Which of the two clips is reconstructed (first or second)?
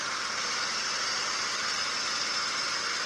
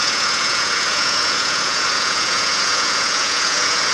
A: second